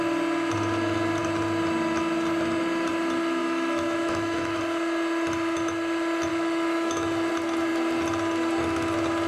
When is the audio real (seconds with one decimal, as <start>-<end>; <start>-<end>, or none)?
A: 0.0-3.4; 4.6-6.3; 7.3-9.3